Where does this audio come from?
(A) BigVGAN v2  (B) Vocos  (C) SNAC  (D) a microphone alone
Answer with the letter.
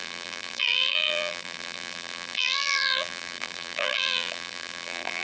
A